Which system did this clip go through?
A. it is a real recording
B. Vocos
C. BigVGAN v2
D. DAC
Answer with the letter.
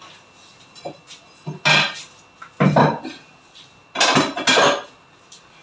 A